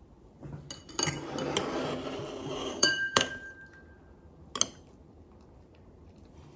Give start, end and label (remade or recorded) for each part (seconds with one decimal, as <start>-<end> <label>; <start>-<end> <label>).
0.0-2.4 recorded; 2.4-3.3 remade; 3.3-6.6 recorded